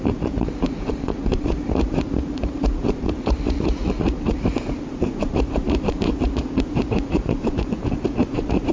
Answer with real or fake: fake